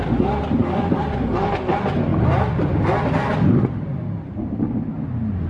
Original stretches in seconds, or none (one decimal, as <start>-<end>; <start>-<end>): 0.0-2.1; 2.8-5.5